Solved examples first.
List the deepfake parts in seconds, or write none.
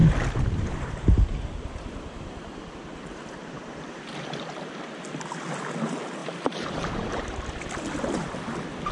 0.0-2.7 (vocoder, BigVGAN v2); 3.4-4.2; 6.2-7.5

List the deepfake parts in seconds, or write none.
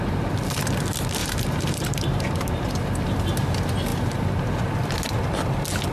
1.2-3.2 (vocoder, BigVGAN v2); 3.9-4.4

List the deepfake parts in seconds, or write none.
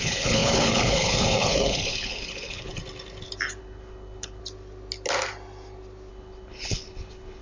0.0-2.7 (codec, HILCodec); 3.6-4.4; 6.1-7.4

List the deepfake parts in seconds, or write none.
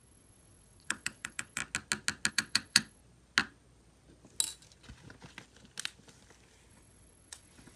0.0-1.6 (vocoder, WaveNeXt); 2.3-3.0; 6.7-7.8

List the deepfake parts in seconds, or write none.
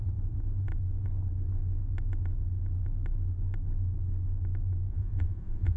4.9-5.8 (vocoder, Vocos)